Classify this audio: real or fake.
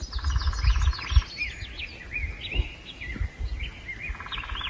real